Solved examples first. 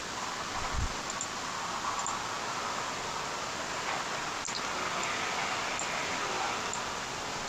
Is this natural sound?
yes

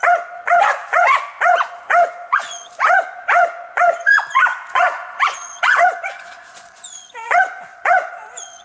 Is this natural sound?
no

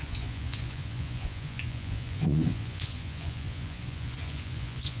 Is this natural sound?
no